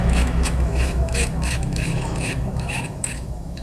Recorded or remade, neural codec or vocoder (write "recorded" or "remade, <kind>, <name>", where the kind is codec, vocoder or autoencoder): remade, autoencoder, DAC-VAE